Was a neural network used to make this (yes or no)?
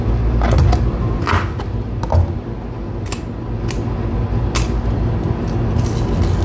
no